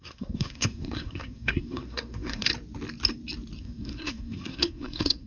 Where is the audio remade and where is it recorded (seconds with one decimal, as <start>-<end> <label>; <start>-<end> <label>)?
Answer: 0.0-2.5 remade; 2.5-3.6 recorded; 3.6-5.3 remade